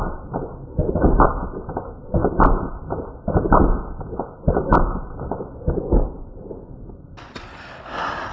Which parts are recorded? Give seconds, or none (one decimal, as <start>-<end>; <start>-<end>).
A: 0.0-8.3